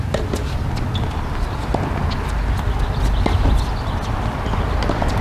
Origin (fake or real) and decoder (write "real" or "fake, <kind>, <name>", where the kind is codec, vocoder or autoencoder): real